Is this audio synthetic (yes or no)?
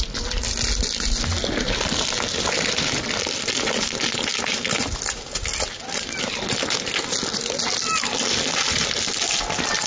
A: no